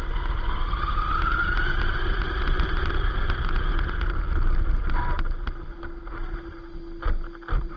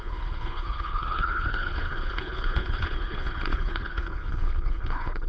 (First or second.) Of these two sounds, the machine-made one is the second